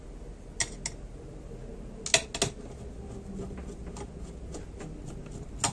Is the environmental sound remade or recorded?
recorded